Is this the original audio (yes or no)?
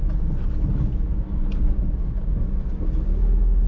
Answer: yes